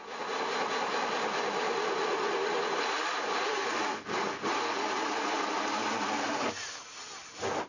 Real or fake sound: real